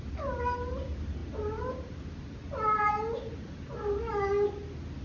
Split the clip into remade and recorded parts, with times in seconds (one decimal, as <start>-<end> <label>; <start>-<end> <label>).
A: 0.0-5.0 recorded